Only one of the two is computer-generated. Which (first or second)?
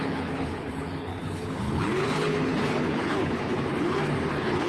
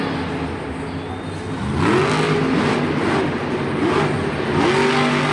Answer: first